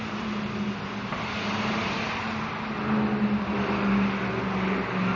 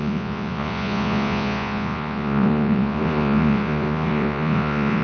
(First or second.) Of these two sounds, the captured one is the first